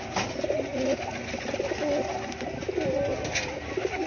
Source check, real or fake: real